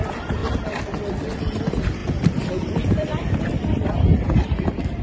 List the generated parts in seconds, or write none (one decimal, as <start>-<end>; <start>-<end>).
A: 0.0-0.4; 1.0-2.0; 2.5-5.0